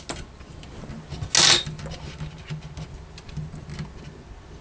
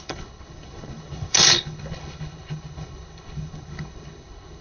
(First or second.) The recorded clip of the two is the first